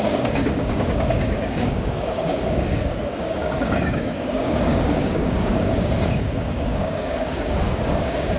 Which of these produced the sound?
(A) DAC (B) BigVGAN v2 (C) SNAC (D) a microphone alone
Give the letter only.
A